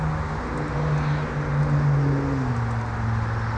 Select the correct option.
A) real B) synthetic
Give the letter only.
A